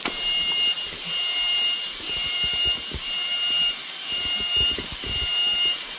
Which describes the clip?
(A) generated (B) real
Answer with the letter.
A